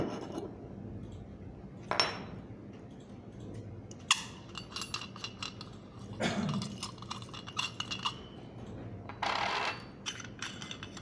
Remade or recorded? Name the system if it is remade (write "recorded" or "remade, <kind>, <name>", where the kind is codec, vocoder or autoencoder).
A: recorded